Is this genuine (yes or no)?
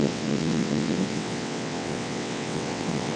no